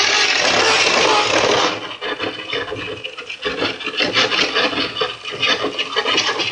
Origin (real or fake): real